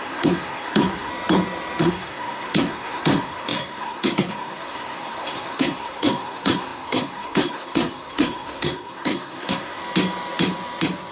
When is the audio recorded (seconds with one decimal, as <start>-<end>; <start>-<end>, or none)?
1.1-1.8; 9.8-11.1